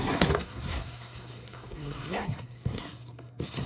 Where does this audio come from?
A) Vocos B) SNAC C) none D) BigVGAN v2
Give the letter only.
B